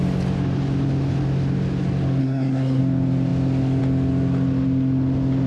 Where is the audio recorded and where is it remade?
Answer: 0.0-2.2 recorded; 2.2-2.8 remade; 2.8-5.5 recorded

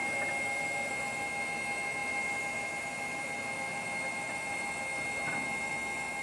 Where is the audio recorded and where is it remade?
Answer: 0.0-6.2 recorded

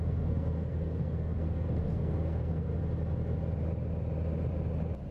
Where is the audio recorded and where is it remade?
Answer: 0.0-2.7 remade; 2.7-5.1 recorded

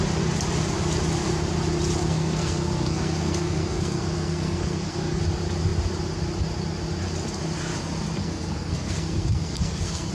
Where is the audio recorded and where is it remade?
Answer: 0.0-2.0 recorded; 2.0-5.2 remade; 5.2-8.2 recorded; 8.2-10.1 remade